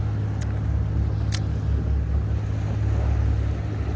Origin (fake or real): real